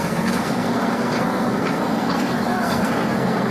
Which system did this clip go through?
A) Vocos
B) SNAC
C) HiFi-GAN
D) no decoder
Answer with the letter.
B